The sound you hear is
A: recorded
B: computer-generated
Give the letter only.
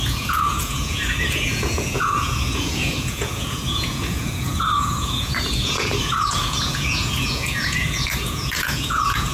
B